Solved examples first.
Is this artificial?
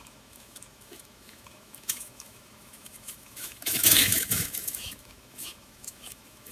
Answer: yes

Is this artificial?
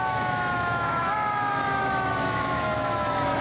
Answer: yes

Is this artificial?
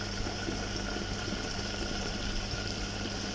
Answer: no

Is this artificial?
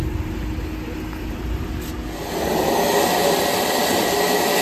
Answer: no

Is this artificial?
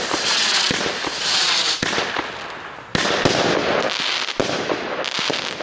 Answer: no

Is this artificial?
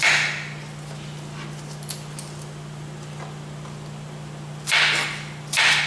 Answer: no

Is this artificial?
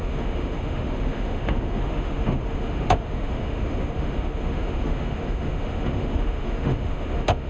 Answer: yes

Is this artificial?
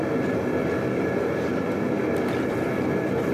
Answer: no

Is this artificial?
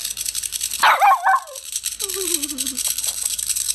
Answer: no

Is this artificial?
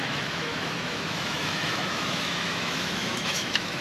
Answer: yes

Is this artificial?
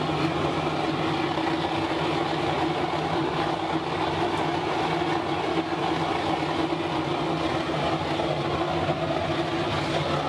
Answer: no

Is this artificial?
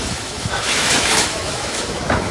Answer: yes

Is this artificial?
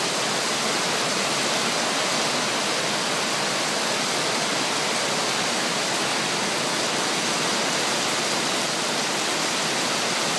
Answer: no